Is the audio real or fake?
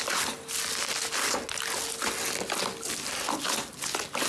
real